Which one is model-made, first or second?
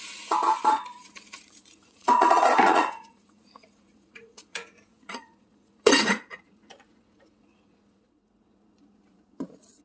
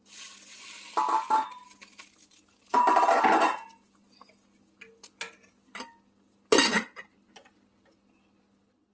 first